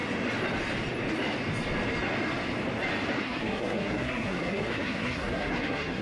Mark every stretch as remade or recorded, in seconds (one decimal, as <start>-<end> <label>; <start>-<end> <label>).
0.0-3.2 recorded; 3.2-6.0 remade